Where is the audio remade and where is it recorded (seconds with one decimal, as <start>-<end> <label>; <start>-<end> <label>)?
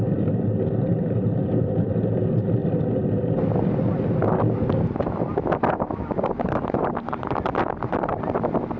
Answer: 0.0-2.6 remade; 2.6-5.7 recorded; 5.7-8.8 remade